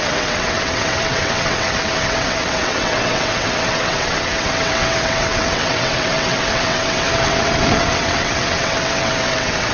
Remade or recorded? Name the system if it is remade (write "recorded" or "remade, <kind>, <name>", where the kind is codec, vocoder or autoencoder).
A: remade, vocoder, WaveNeXt